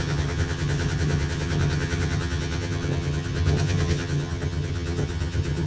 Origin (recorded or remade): remade